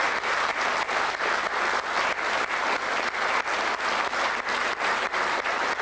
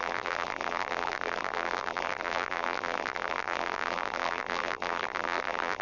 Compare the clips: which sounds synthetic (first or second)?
second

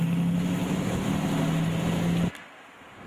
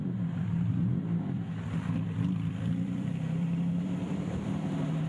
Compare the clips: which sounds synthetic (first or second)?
second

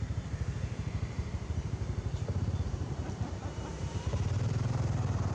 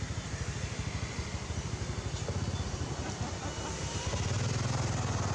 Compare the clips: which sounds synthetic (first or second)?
first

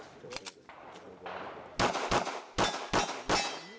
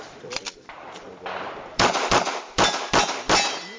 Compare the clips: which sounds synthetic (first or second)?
second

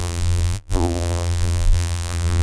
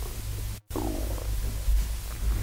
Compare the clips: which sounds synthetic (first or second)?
first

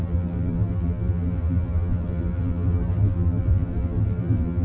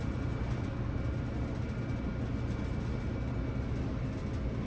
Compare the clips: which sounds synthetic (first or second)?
first